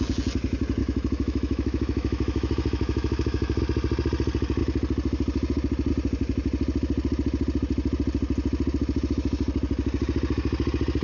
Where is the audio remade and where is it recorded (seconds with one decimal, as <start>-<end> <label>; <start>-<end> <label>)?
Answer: 0.0-0.8 recorded; 0.8-3.6 remade; 3.6-11.0 recorded